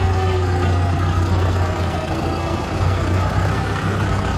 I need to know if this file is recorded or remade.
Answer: remade